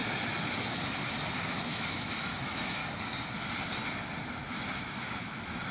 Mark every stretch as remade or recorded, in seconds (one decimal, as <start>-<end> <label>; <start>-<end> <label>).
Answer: 0.0-1.7 recorded; 1.7-2.8 remade; 2.8-4.5 recorded; 4.5-5.7 remade